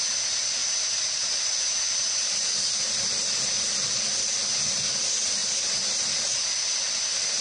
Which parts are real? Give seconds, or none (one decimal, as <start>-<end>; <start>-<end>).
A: 0.0-7.4